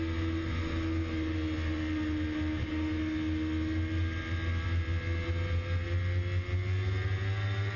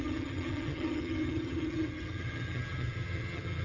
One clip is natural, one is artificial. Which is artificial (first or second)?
second